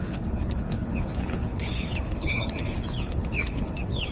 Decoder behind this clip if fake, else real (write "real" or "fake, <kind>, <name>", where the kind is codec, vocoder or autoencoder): fake, codec, HILCodec